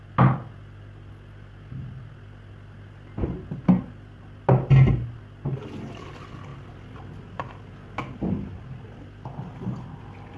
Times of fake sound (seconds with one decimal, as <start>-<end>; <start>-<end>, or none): none